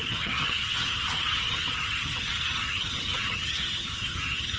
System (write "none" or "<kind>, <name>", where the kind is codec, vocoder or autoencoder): vocoder, HiFi-GAN